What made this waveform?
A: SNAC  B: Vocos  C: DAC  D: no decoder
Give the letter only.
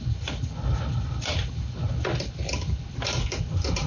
D